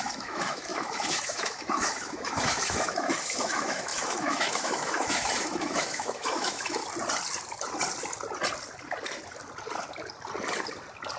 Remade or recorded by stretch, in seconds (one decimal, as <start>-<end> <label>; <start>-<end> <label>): 0.0-6.8 remade; 6.8-11.2 recorded